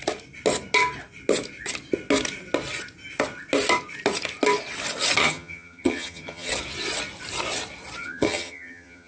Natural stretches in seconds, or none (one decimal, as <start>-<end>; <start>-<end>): 0.0-5.2; 6.5-8.0